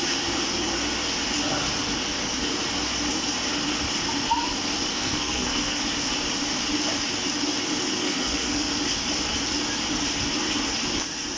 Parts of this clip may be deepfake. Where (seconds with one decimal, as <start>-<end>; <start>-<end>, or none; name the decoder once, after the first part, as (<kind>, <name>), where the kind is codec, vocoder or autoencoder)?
4.9-5.8 (codec, SNAC); 8.0-8.7